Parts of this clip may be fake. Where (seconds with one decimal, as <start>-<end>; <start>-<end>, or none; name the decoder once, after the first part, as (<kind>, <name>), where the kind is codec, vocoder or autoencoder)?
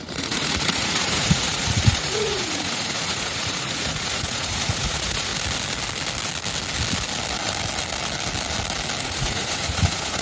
0.0-5.3 (vocoder, Vocos); 9.0-10.2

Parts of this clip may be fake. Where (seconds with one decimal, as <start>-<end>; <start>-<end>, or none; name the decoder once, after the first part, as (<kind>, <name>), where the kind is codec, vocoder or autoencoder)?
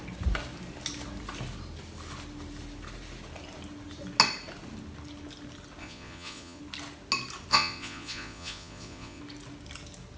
5.8-6.6 (vocoder, Vocos); 7.5-9.2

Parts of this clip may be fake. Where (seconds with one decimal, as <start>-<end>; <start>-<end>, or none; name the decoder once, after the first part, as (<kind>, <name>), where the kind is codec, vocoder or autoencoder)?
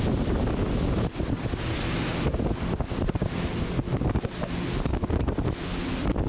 none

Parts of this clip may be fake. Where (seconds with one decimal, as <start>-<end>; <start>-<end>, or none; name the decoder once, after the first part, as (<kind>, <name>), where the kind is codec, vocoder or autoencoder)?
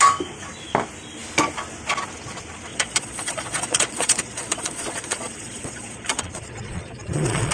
2.7-7.5 (vocoder, Vocos)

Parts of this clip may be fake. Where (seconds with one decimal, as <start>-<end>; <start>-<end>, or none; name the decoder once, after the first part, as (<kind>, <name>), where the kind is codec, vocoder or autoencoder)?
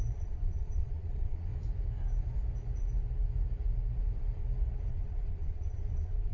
0.0-1.5 (vocoder, Vocos); 4.9-6.3